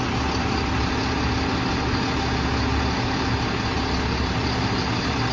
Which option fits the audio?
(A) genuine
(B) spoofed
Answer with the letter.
A